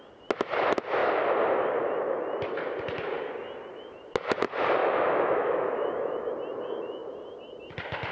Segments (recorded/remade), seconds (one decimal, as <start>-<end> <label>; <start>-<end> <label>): 0.0-4.8 recorded; 4.8-6.3 remade; 6.3-8.1 recorded